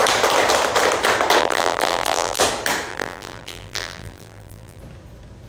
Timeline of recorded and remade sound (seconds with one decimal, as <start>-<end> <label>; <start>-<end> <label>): 0.0-1.4 recorded; 1.4-2.4 remade; 2.4-2.9 recorded; 2.9-4.8 remade; 4.8-5.5 recorded